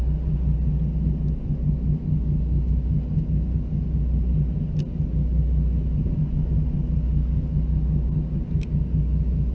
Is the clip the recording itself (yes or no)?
yes